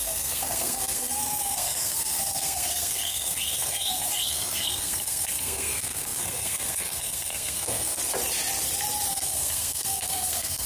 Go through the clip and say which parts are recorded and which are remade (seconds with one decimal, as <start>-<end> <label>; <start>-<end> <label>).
0.0-8.0 remade; 8.0-9.1 recorded; 9.1-10.7 remade